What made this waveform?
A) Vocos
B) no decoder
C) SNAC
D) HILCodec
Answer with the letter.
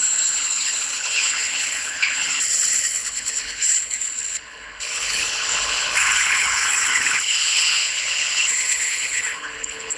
D